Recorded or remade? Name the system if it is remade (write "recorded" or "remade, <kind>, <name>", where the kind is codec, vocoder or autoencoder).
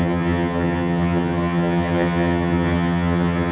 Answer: remade, vocoder, HiFi-GAN